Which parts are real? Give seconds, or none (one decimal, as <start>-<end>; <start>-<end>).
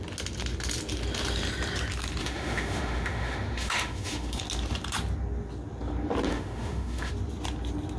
0.0-2.2; 4.4-6.3; 7.1-8.0